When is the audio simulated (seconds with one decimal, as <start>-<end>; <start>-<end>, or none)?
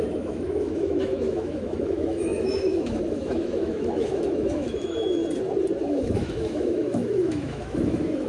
0.0-5.2; 5.8-8.3